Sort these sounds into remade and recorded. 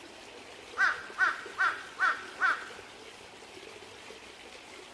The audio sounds recorded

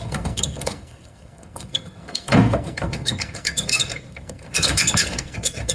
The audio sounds remade